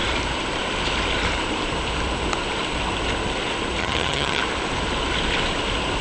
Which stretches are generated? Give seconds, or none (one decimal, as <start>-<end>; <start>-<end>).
3.8-4.4